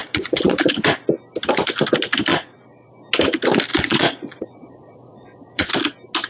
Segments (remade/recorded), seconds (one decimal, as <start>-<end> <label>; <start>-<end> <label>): 0.0-0.7 remade; 0.7-2.3 recorded; 2.3-2.9 remade; 2.9-3.7 recorded; 3.7-5.7 remade; 5.7-6.3 recorded